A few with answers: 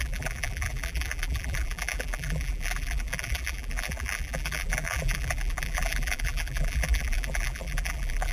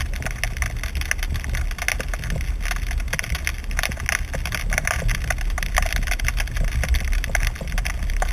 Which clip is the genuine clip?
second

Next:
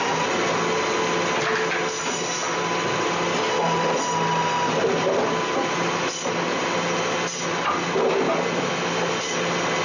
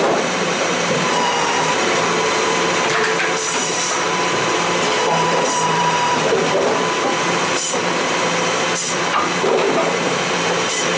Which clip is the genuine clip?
first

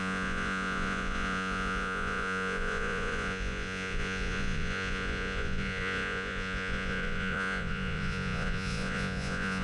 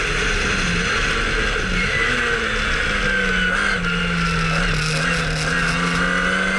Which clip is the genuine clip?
second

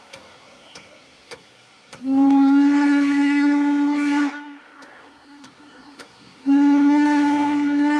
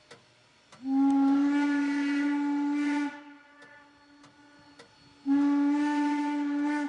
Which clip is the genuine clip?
second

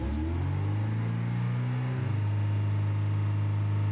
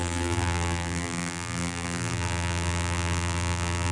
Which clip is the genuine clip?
first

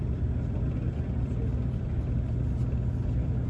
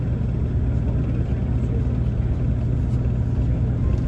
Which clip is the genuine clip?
second